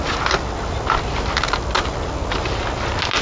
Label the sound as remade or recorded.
recorded